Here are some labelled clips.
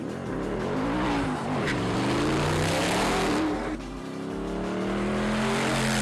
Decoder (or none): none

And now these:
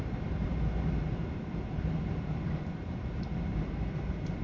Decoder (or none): vocoder, BigVGAN v2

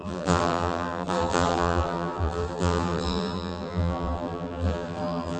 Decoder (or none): vocoder, BigVGAN v2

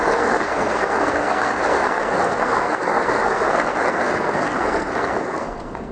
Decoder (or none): codec, SNAC